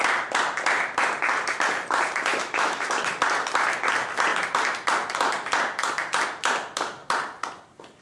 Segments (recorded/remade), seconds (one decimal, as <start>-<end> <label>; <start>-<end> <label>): 0.0-2.3 recorded; 2.3-3.1 remade; 3.1-8.0 recorded